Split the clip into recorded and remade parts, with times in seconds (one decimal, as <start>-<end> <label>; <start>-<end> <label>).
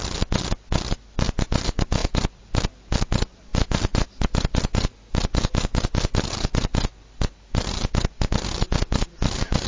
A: 0.0-9.7 recorded